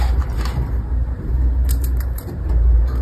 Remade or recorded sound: remade